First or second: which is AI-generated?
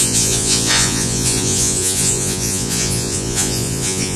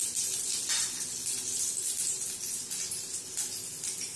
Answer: first